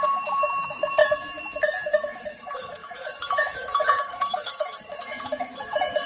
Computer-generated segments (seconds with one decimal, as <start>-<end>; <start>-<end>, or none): 0.0-6.1